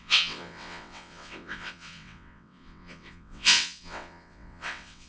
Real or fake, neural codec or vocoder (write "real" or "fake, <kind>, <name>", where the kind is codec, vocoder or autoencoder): fake, vocoder, WaveNeXt